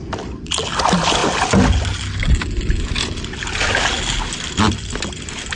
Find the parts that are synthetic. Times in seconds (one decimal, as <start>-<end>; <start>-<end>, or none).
none